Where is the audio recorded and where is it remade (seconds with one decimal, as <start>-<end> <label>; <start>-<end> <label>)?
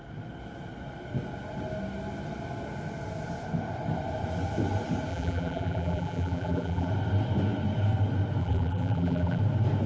0.0-5.1 recorded; 5.1-6.9 remade; 6.9-8.4 recorded; 8.4-9.4 remade; 9.4-9.9 recorded